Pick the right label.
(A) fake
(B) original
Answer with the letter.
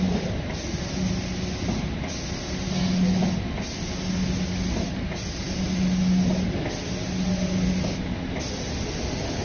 B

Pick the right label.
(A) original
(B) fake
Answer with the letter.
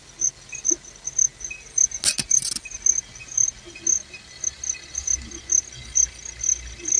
A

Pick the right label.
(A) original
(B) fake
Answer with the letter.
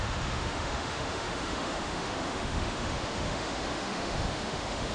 B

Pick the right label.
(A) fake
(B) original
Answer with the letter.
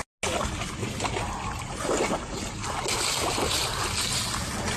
B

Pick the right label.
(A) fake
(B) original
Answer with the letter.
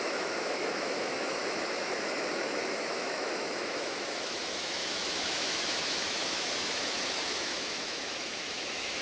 A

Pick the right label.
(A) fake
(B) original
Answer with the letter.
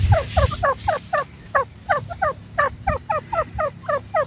B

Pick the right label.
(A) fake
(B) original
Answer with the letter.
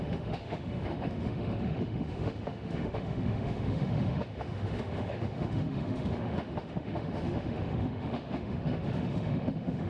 A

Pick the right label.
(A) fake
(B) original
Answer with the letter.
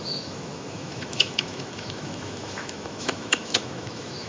A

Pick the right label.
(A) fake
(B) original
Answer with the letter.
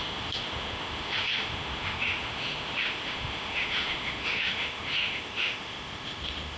A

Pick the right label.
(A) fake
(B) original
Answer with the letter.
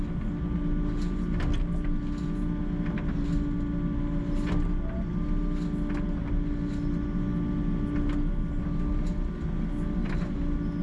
B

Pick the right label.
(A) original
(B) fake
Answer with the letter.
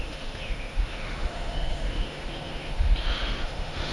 B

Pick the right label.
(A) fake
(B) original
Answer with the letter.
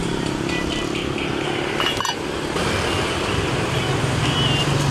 B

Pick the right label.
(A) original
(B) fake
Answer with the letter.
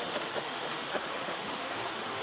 B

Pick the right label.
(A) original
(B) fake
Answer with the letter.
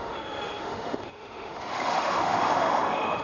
B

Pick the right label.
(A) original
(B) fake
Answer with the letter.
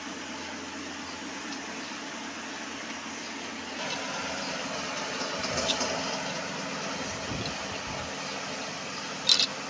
A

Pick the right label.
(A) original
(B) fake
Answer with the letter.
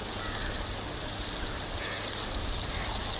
A